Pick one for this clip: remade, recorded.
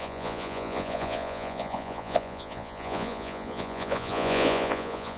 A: remade